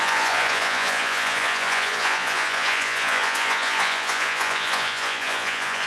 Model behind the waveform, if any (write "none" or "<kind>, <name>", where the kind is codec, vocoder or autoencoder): vocoder, Vocos